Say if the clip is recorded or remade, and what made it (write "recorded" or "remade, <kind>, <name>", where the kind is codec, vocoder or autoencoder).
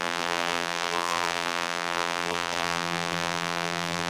remade, vocoder, BigVGAN v2